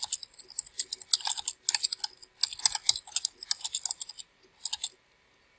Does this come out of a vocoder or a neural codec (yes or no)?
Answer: no